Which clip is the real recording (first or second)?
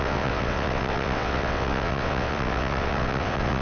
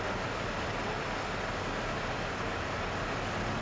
second